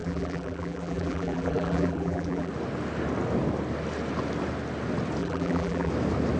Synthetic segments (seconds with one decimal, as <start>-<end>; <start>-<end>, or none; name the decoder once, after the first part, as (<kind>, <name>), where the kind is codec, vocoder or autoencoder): 0.0-2.5 (vocoder, BigVGAN v2); 5.2-5.9